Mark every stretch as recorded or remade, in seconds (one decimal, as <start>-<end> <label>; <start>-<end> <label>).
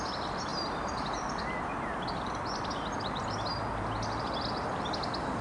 0.0-0.5 recorded; 0.5-2.3 remade; 2.3-5.4 recorded